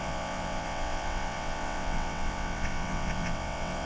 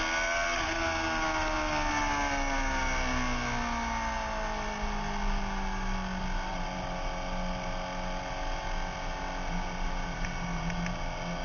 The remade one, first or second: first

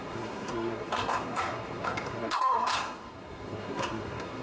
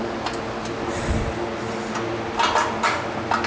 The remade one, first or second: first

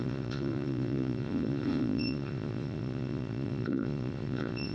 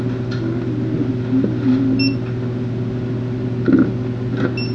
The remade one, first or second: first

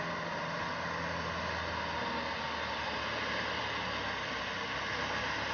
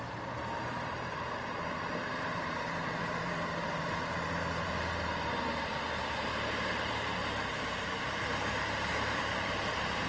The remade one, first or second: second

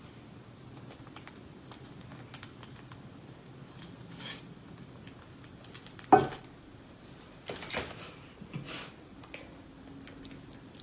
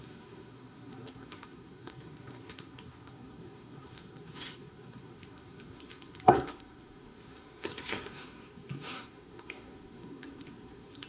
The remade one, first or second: second